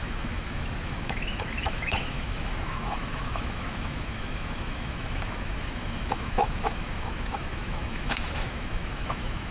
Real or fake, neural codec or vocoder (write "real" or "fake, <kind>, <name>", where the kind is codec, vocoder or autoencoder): fake, autoencoder, DAC-VAE